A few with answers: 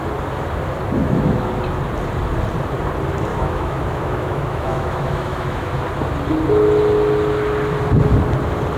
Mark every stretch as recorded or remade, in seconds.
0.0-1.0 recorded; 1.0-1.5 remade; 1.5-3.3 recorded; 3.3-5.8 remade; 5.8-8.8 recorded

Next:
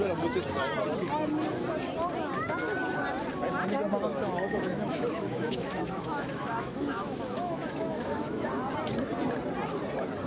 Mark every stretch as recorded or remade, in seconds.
0.0-4.1 recorded; 4.1-8.5 remade; 8.5-10.3 recorded